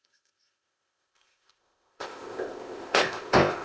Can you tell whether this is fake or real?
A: fake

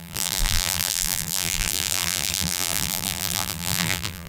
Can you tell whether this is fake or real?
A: fake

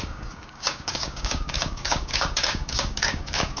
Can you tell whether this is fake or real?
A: fake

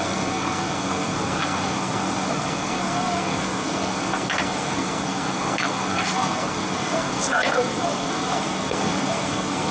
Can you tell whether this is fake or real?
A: fake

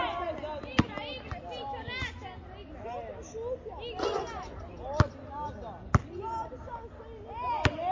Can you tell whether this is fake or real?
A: real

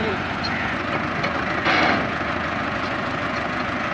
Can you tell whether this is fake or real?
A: fake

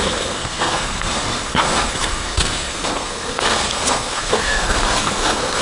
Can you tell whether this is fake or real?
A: fake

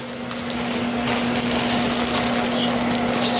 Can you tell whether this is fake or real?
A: real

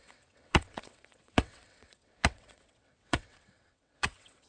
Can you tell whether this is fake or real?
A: fake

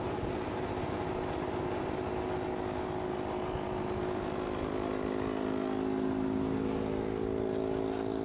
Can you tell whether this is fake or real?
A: real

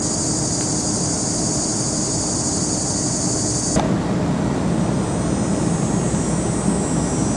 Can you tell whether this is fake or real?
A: real